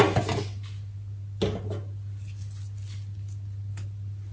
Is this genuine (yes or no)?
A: yes